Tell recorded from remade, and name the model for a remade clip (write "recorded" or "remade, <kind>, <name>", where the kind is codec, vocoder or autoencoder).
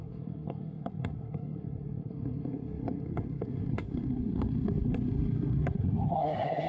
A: remade, codec, SNAC